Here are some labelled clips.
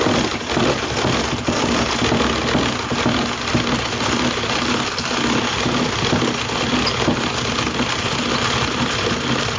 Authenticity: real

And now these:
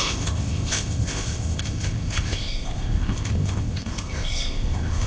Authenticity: fake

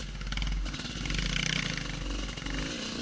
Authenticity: real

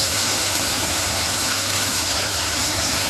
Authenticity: fake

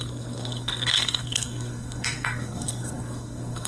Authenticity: fake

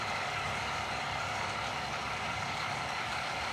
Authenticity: fake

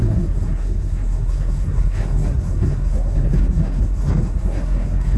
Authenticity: fake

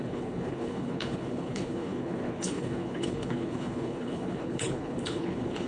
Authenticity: fake